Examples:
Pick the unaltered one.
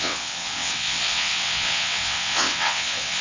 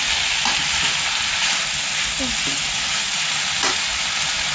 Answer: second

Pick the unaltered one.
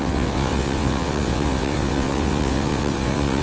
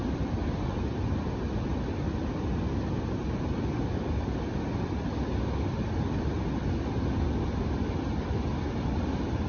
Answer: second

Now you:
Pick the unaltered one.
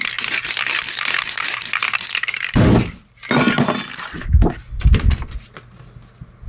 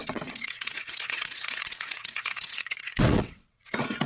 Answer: first